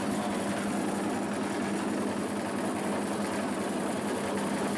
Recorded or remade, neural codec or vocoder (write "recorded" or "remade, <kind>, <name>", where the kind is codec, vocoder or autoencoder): recorded